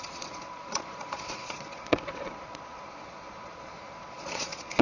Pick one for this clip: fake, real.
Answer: fake